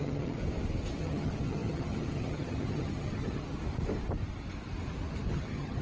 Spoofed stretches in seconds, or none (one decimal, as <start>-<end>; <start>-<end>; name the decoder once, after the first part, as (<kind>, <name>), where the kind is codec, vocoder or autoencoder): 0.0-0.4 (vocoder, HiFi-GAN); 1.0-3.4; 5.3-5.8